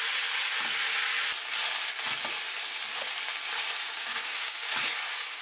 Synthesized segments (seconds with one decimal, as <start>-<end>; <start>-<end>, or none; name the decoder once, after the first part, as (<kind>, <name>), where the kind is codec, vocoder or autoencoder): 4.0-5.4 (codec, DAC)